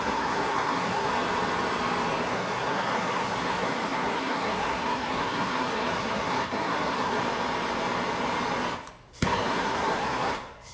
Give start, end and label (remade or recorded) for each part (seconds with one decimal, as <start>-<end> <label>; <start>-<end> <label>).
0.0-1.1 remade; 1.1-2.2 recorded; 2.2-7.2 remade; 7.2-9.1 recorded; 9.1-10.7 remade